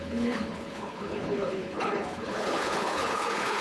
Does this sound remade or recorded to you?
remade